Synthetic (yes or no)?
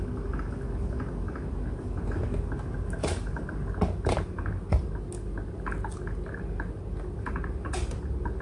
no